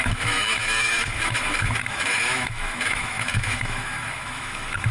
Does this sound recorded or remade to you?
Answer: remade